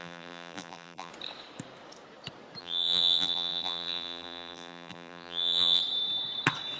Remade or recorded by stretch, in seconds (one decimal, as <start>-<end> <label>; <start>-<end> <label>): 0.0-1.1 remade; 1.1-2.6 recorded; 2.6-5.8 remade; 5.8-6.8 recorded